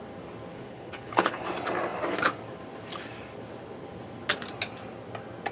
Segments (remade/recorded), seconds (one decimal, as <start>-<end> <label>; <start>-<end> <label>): 0.0-0.5 recorded; 0.5-1.4 remade; 1.4-5.5 recorded